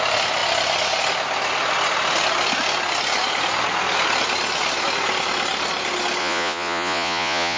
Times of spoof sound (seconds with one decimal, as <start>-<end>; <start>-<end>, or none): 6.2-7.6